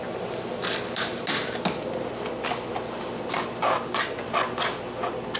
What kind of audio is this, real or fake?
real